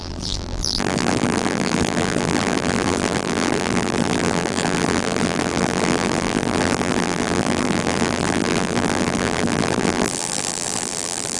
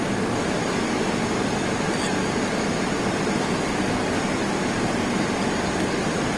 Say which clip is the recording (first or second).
second